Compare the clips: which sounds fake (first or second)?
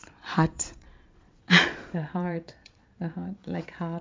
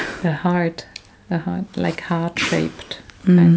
first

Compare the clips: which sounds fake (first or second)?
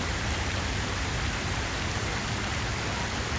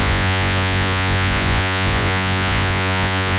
second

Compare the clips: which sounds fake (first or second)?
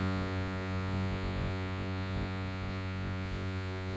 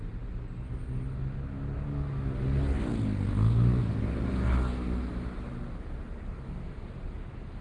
first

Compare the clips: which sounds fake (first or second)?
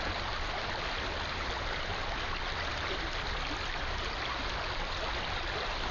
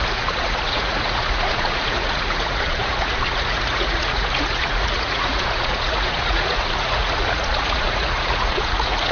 second